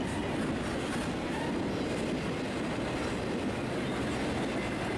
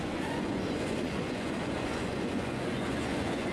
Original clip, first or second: first